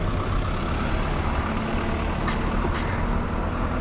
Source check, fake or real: real